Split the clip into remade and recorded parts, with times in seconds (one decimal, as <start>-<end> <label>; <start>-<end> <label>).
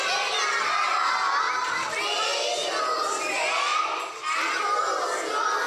0.0-5.7 recorded